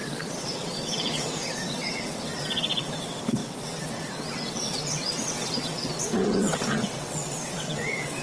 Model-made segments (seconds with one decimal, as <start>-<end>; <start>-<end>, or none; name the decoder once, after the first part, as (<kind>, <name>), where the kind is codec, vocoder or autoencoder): 0.0-8.2 (vocoder, WaveNeXt)